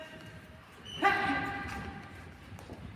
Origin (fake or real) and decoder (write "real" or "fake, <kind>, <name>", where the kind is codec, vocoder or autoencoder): real